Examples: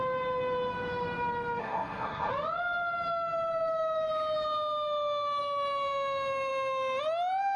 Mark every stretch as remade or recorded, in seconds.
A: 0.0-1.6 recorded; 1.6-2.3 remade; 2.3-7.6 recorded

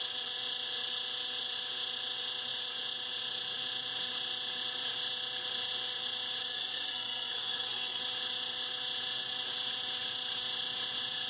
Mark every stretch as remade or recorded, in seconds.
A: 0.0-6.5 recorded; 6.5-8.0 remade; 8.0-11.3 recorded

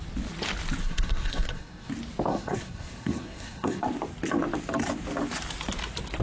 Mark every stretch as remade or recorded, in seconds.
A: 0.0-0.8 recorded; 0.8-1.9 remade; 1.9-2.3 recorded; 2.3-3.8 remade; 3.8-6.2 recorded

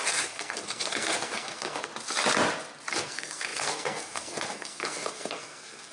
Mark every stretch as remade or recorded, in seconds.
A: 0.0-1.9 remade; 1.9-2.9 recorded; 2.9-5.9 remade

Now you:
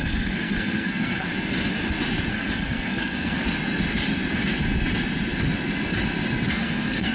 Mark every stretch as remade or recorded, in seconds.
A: 0.0-1.3 remade; 1.3-2.3 recorded; 2.3-3.4 remade; 3.4-6.5 recorded; 6.5-7.1 remade

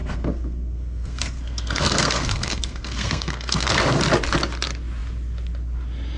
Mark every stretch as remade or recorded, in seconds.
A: 0.0-3.7 remade; 3.7-6.2 recorded

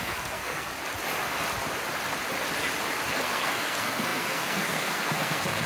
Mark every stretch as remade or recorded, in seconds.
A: 0.0-0.7 remade; 0.7-2.9 recorded; 2.9-5.7 remade